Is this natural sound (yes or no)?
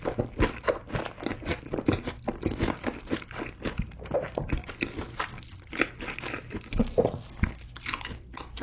yes